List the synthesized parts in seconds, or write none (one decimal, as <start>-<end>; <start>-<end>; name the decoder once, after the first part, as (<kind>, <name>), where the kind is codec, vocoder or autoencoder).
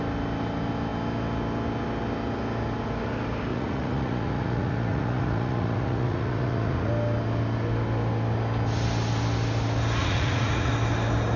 3.5-6.9 (vocoder, Vocos); 10.0-10.7